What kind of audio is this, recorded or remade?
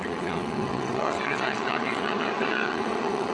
remade